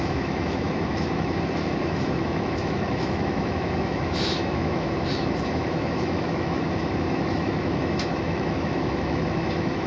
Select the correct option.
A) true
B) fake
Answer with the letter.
B